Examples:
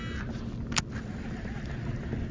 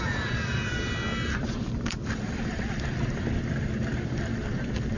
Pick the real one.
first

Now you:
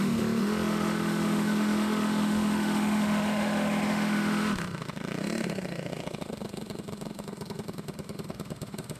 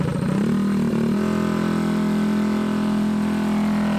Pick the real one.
second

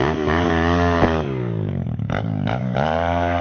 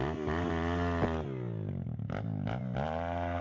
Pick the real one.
second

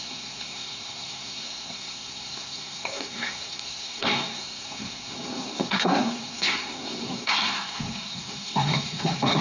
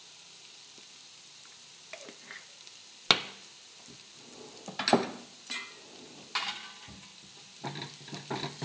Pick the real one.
second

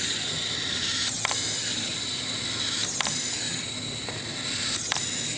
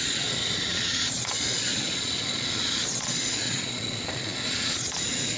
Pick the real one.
first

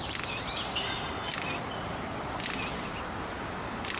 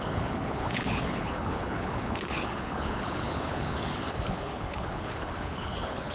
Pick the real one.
first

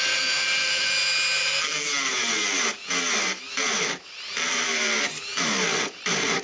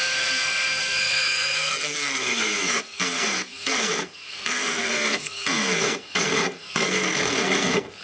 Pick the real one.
first